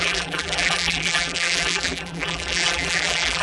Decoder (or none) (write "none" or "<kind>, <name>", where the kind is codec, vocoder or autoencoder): vocoder, BigVGAN v2